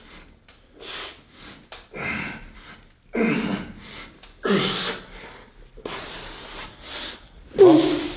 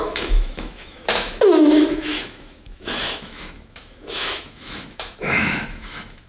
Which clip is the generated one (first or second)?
second